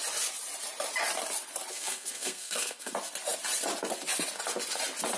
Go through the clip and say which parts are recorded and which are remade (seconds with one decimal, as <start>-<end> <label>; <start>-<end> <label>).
0.0-1.7 recorded; 1.7-2.9 remade; 2.9-5.2 recorded